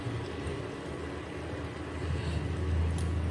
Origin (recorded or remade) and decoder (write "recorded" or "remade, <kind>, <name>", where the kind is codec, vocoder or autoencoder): recorded